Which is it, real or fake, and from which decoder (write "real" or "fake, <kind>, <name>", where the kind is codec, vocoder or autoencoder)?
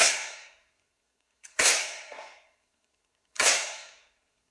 fake, codec, SNAC